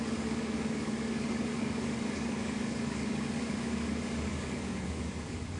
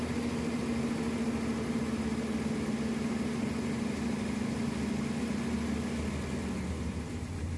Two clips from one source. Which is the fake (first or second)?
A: first